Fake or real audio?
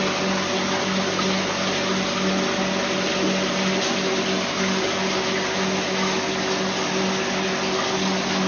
real